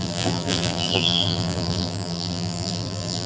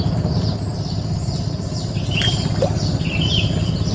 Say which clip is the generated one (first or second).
first